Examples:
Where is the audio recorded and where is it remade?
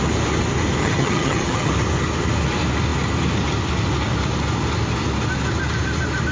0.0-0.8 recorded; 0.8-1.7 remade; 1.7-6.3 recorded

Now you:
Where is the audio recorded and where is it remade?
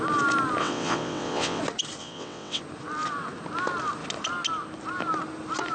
0.0-0.6 recorded; 0.6-1.6 remade; 1.6-2.0 recorded; 2.0-2.6 remade; 2.6-5.7 recorded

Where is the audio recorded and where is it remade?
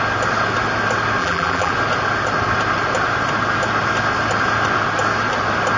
0.0-1.2 recorded; 1.2-1.7 remade; 1.7-5.8 recorded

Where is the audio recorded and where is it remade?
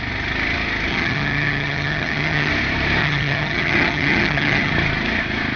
0.0-0.9 recorded; 0.9-2.5 remade; 2.5-3.0 recorded; 3.0-4.7 remade; 4.7-5.6 recorded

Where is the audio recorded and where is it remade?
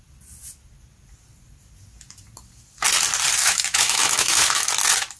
0.0-3.4 recorded; 3.4-4.7 remade; 4.7-5.2 recorded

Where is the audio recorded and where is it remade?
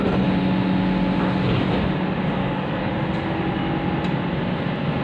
0.0-2.4 recorded; 2.4-2.9 remade; 2.9-5.0 recorded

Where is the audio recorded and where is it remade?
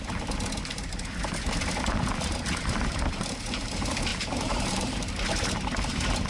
0.0-4.1 recorded; 4.1-5.1 remade; 5.1-6.3 recorded